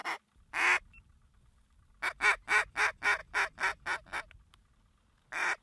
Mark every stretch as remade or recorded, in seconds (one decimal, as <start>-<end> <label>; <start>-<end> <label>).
0.0-5.6 recorded